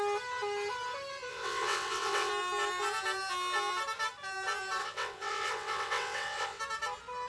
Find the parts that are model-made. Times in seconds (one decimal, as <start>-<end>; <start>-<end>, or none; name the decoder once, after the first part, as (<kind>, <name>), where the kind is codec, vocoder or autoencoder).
1.3-2.3 (vocoder, WaveNeXt); 4.8-6.6